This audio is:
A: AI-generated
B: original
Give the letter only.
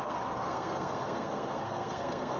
A